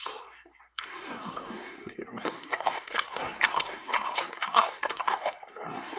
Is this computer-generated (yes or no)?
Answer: yes